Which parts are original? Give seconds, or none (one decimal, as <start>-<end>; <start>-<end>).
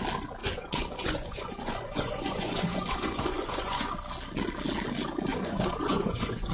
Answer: 0.0-0.4; 3.9-5.3